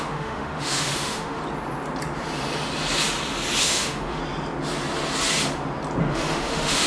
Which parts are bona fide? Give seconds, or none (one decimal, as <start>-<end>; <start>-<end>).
1.4-3.6; 4.2-6.1